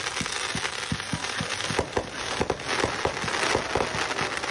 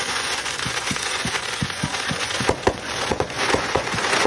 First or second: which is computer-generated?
second